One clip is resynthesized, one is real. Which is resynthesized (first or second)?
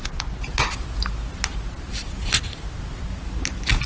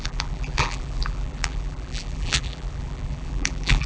second